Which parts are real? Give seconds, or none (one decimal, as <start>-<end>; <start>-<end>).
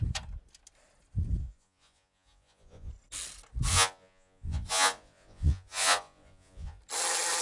0.0-1.4; 2.9-3.7; 6.8-7.4